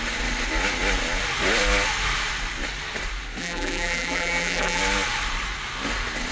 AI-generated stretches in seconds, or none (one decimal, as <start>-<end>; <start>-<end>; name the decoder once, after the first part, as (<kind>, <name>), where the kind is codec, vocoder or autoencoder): 3.4-4.8 (vocoder, BigVGAN v2)